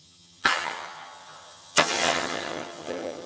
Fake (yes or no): yes